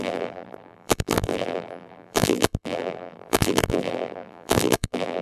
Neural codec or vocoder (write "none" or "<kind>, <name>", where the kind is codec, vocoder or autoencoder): vocoder, BigVGAN v2